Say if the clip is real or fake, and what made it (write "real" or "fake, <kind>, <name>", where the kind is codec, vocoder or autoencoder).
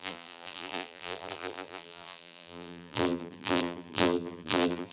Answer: fake, vocoder, BigVGAN v2